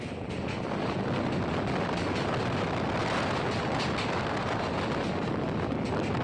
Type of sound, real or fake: real